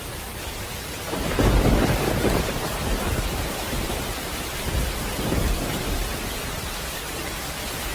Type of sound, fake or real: real